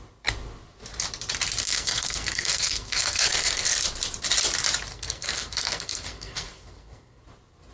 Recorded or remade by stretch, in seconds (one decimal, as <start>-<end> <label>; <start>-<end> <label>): 0.0-1.6 recorded; 1.6-3.7 remade; 3.7-4.9 recorded; 4.9-7.2 remade; 7.2-7.7 recorded